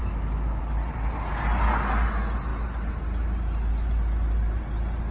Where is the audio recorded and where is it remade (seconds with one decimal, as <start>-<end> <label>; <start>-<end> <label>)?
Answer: 0.0-0.6 remade; 0.6-5.1 recorded